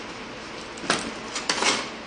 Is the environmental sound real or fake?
real